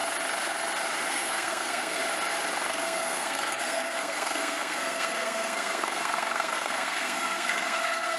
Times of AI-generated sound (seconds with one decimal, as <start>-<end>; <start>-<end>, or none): 1.1-2.0; 2.7-8.2